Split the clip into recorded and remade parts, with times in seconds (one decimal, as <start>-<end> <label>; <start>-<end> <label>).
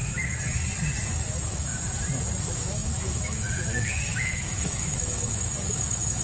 0.0-1.1 recorded; 1.1-1.7 remade; 1.7-2.4 recorded; 2.4-6.2 remade